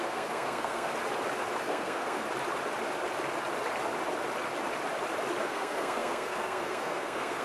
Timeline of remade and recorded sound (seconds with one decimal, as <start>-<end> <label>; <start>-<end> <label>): 0.0-0.9 remade; 0.9-1.6 recorded; 1.6-2.2 remade; 2.2-5.4 recorded; 5.4-7.4 remade